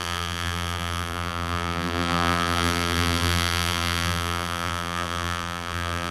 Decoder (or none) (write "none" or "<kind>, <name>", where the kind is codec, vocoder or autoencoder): vocoder, BigVGAN v2